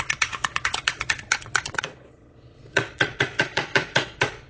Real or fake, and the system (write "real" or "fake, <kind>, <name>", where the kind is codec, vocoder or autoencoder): fake, vocoder, Vocos